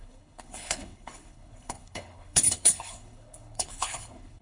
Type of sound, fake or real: fake